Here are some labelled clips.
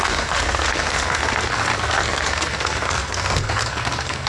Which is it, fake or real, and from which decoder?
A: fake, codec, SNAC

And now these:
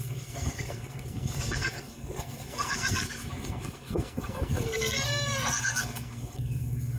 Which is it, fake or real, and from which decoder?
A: fake, codec, SNAC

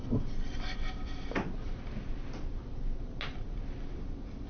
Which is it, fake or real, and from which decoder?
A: real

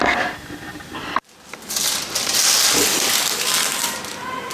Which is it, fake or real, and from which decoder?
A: real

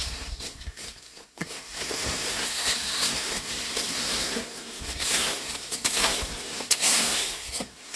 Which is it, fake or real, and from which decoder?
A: fake, codec, SNAC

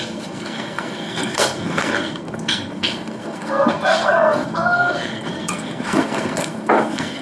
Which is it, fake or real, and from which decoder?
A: fake, codec, SNAC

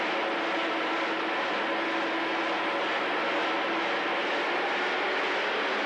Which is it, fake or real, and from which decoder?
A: real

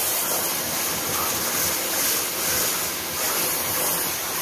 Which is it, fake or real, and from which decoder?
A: real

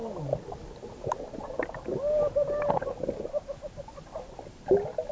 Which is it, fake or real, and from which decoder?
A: real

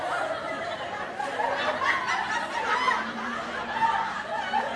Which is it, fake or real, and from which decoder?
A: real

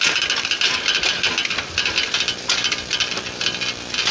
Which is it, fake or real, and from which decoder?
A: real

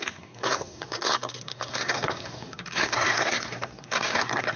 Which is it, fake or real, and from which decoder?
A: fake, codec, SNAC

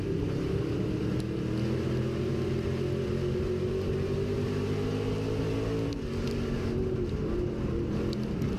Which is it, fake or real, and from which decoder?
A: real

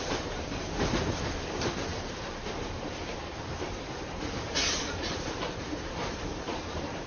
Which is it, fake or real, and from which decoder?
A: fake, vocoder, BigVGAN v2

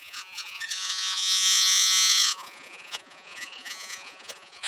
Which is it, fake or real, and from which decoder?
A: fake, vocoder, Vocos